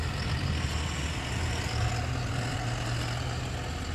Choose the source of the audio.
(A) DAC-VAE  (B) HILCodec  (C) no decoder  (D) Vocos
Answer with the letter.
C